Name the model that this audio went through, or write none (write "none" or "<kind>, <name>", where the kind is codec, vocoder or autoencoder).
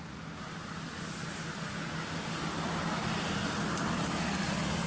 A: none